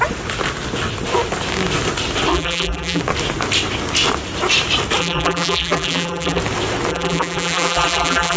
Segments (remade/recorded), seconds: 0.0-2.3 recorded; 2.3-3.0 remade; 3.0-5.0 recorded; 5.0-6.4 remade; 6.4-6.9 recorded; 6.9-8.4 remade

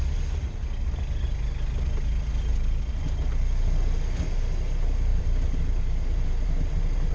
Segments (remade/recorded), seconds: 0.0-5.1 recorded; 5.1-7.1 remade

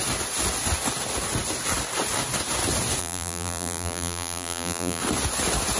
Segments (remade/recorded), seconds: 0.0-3.0 recorded; 3.0-5.0 remade; 5.0-5.8 recorded

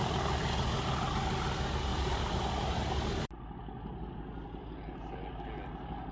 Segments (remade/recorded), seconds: 0.0-1.9 recorded; 1.9-2.5 remade; 2.5-6.1 recorded

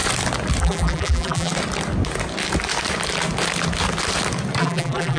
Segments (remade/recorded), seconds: 0.0-0.6 recorded; 0.6-1.5 remade; 1.5-4.6 recorded; 4.6-5.2 remade

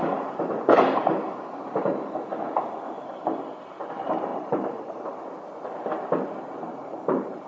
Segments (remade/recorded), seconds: 0.0-4.3 recorded; 4.3-5.8 remade; 5.8-6.8 recorded; 6.8-7.5 remade

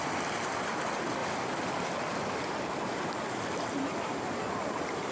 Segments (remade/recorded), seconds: 0.0-5.1 recorded